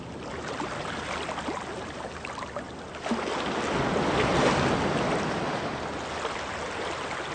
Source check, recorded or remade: recorded